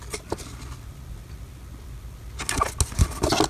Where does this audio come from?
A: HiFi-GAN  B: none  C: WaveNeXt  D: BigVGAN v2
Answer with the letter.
B